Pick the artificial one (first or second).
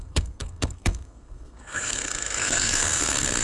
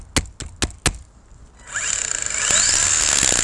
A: first